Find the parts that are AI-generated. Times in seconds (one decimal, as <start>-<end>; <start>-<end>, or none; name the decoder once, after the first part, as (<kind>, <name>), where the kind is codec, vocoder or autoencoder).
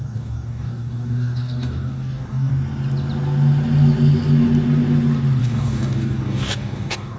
0.0-2.5 (codec, DAC); 5.4-7.2